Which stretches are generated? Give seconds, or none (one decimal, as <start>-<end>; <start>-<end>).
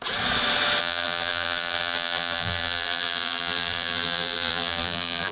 0.8-5.3